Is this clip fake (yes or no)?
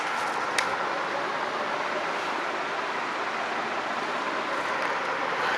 no